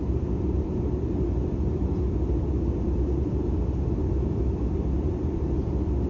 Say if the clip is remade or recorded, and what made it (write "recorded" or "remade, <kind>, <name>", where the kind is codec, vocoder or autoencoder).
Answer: remade, vocoder, BigVGAN v2